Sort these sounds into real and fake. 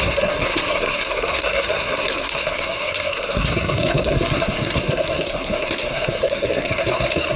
fake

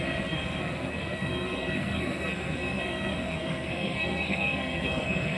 fake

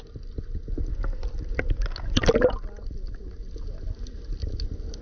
real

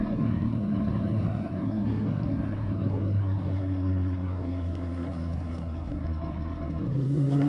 fake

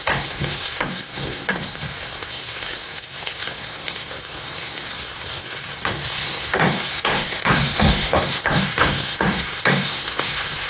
fake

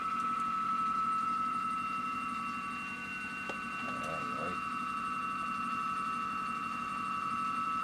real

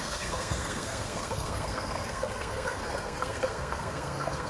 fake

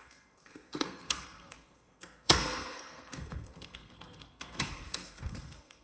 fake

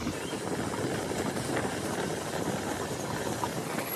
real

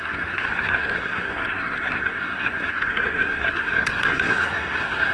fake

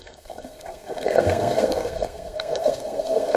fake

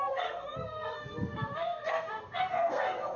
fake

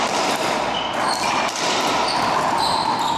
real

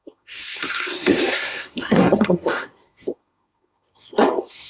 fake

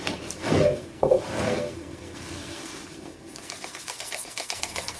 fake